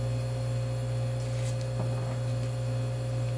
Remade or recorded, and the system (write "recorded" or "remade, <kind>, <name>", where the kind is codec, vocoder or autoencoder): recorded